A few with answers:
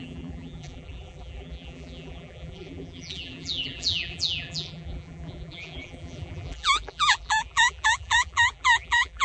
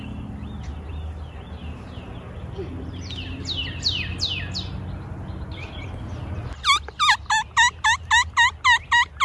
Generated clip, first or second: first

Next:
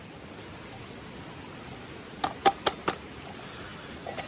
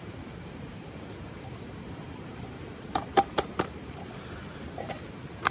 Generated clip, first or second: second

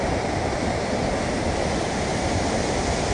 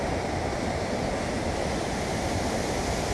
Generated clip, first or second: first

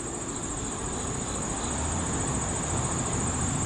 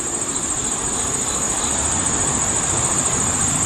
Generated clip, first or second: second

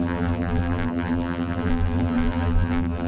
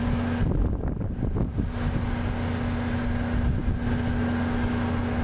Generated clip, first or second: first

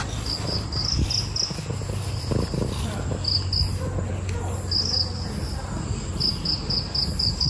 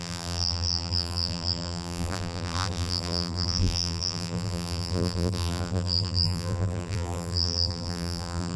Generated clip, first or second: second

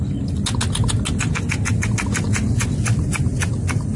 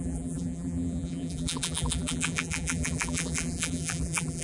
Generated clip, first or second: second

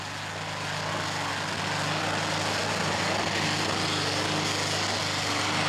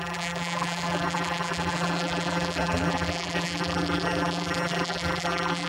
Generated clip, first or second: second